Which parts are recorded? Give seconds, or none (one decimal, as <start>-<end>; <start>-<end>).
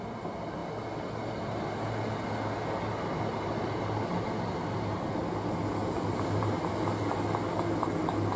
0.0-8.4